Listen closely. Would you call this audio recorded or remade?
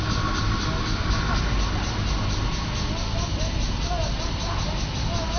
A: recorded